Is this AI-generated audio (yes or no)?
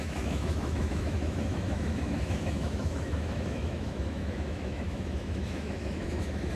yes